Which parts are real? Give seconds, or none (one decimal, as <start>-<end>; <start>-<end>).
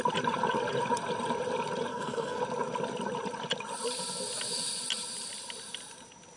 0.0-1.9; 2.4-6.4